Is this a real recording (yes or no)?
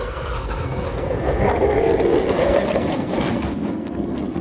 no